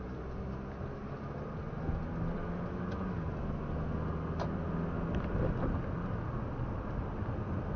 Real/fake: real